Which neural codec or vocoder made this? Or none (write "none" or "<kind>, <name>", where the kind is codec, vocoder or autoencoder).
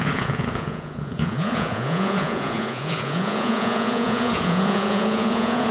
vocoder, Vocos